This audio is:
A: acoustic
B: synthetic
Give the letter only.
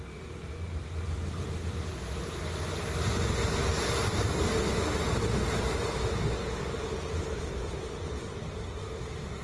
A